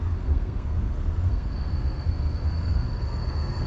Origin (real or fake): fake